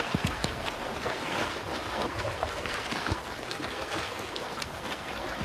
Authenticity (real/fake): fake